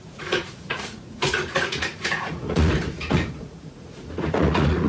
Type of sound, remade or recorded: remade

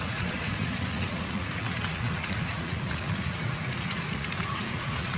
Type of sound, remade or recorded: remade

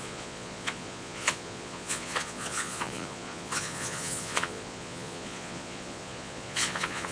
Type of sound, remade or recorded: remade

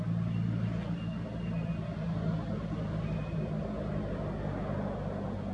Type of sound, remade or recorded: recorded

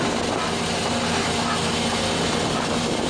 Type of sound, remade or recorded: recorded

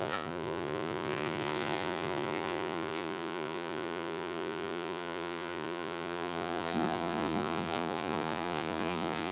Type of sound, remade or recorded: remade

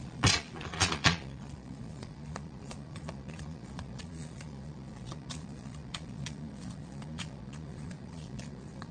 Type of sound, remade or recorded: remade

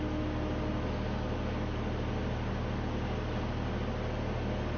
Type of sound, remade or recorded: recorded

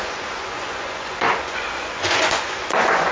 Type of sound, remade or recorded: remade